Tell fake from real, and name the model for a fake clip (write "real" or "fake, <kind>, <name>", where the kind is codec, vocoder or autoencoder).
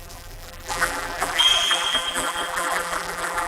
fake, vocoder, BigVGAN v2